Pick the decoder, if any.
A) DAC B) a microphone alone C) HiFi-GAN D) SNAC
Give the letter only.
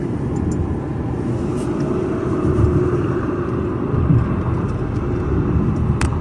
B